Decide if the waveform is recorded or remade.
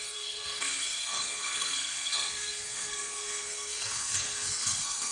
remade